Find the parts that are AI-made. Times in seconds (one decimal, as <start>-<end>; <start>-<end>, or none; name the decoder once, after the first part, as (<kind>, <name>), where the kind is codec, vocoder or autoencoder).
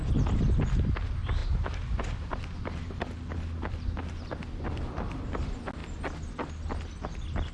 none